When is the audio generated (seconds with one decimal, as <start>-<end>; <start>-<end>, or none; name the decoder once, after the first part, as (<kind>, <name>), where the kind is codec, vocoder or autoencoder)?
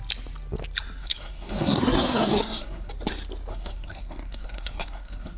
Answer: 1.0-2.9 (codec, SNAC); 3.5-5.4